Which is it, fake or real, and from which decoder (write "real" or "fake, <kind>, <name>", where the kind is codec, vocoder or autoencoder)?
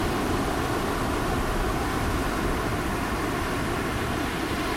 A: real